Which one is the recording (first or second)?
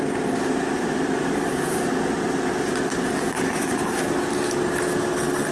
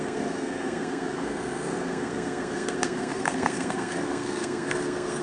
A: first